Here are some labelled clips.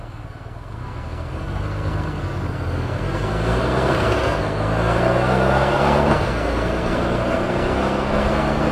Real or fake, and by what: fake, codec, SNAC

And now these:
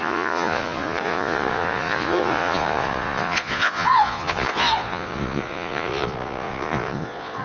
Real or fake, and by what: fake, vocoder, Vocos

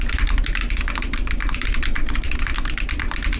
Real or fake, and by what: real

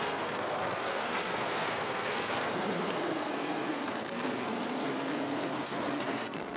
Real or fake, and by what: fake, codec, SNAC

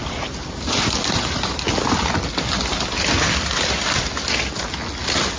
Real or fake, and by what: real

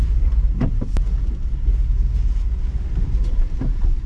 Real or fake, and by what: fake, vocoder, BigVGAN v2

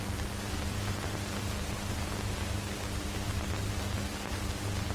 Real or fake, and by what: real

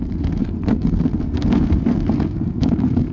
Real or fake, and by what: fake, codec, SNAC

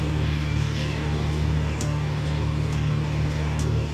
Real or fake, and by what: fake, codec, DAC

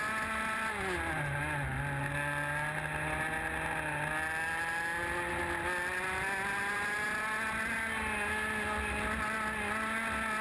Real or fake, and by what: real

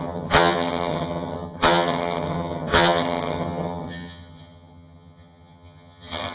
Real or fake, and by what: fake, vocoder, HiFi-GAN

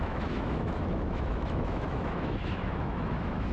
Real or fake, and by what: fake, autoencoder, DAC-VAE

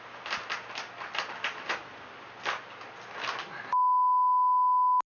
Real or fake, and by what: real